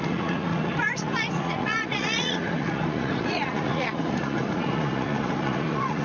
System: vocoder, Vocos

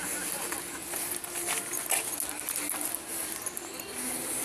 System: none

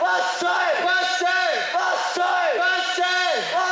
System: none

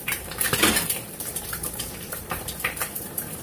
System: vocoder, BigVGAN v2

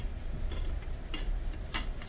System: none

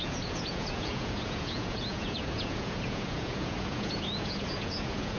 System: vocoder, Vocos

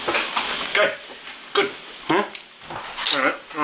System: none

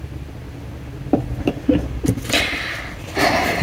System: none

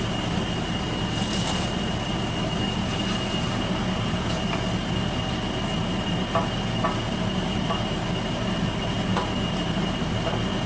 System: none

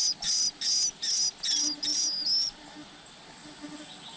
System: none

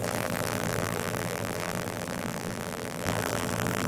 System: vocoder, BigVGAN v2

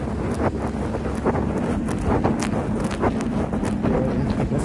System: none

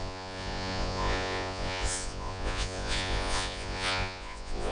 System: vocoder, Vocos